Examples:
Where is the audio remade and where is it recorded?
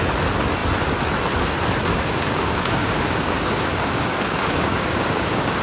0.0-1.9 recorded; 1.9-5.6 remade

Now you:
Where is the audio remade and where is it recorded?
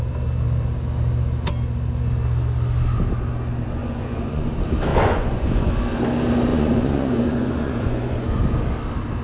0.0-3.8 recorded; 3.8-4.5 remade; 4.5-4.9 recorded; 4.9-5.7 remade; 5.7-6.5 recorded; 6.5-8.4 remade; 8.4-9.2 recorded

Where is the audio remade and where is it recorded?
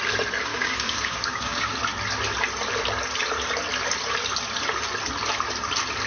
0.0-0.5 recorded; 0.5-1.7 remade; 1.7-6.1 recorded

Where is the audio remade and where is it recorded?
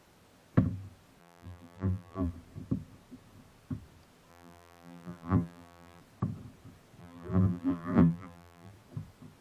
0.0-1.2 recorded; 1.2-2.3 remade; 2.3-4.3 recorded; 4.3-6.0 remade; 6.0-7.0 recorded; 7.0-8.7 remade; 8.7-9.4 recorded